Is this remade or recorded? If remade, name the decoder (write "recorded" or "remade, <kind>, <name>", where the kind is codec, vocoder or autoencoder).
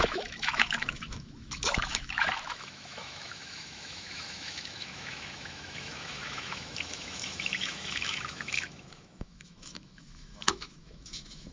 remade, autoencoder, DAC-VAE